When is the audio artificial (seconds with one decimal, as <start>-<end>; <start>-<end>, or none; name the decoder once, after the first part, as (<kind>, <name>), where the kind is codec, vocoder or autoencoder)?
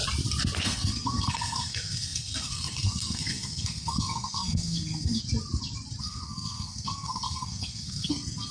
0.6-5.2 (codec, SNAC); 6.0-8.5